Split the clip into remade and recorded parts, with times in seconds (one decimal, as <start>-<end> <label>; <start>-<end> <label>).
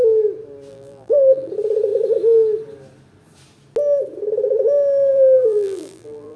0.0-0.7 recorded; 0.7-1.5 remade; 1.5-5.1 recorded; 5.1-6.4 remade